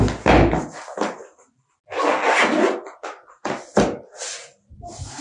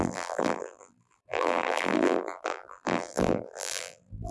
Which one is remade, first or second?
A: second